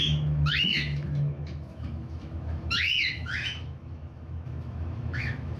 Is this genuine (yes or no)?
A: no